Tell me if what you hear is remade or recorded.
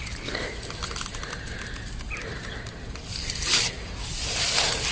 recorded